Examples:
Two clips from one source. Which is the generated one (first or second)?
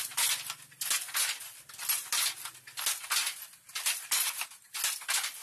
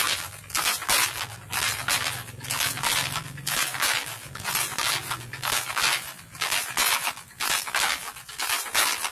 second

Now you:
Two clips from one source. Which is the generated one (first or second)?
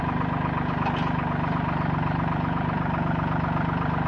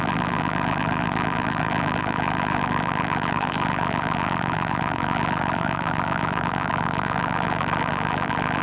second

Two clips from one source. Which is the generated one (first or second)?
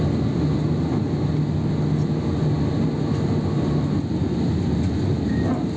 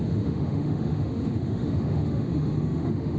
second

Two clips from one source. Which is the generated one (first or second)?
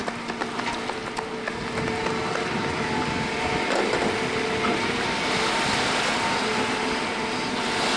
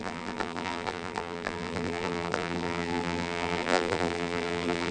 second